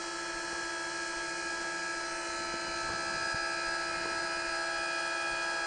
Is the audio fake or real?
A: real